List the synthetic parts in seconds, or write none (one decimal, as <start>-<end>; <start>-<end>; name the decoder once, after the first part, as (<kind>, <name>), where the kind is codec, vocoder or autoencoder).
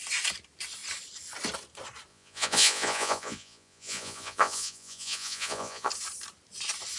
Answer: 2.1-5.9 (vocoder, Vocos)